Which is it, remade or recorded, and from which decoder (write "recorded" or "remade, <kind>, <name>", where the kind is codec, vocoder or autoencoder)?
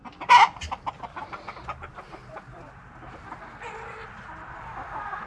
recorded